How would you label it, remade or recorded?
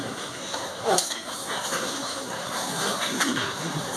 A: remade